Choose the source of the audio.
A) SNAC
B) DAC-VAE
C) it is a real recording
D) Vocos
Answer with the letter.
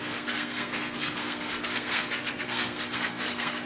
A